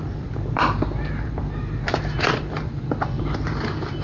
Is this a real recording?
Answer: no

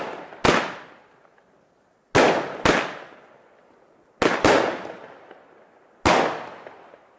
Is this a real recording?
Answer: yes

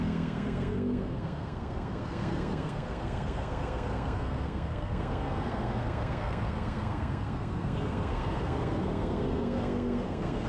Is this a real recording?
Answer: no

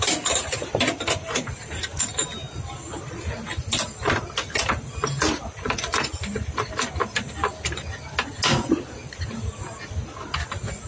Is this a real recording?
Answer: yes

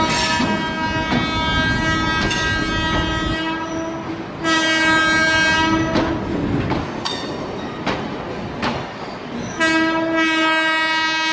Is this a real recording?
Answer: yes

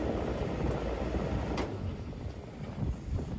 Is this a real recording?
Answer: yes